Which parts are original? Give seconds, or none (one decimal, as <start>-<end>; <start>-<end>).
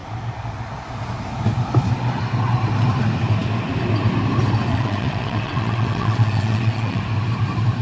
0.0-4.7; 7.0-7.8